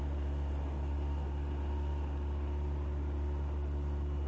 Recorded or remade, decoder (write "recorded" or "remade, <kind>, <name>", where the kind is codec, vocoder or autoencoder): recorded